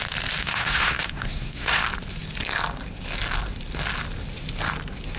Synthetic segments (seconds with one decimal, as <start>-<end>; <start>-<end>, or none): 0.4-1.8